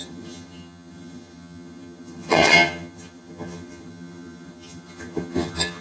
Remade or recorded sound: remade